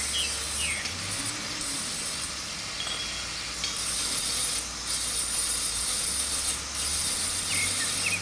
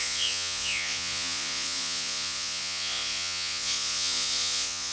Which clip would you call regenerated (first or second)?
second